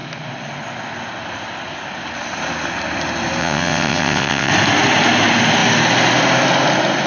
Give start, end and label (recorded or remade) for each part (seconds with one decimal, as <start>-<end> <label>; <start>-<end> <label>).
0.0-3.4 recorded; 3.4-4.5 remade; 4.5-7.1 recorded